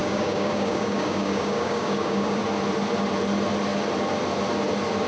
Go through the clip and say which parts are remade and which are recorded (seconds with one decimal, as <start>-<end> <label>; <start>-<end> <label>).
0.0-2.4 remade; 2.4-5.1 recorded